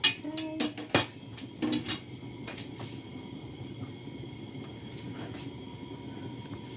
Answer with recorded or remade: recorded